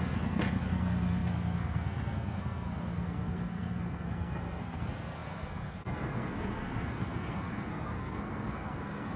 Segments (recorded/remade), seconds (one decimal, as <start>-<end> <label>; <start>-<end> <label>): 0.0-9.2 remade